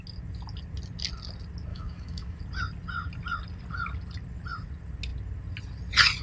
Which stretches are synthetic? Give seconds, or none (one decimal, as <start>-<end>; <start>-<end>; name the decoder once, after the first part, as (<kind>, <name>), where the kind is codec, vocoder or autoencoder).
1.7-2.4 (autoencoder, DAC-VAE)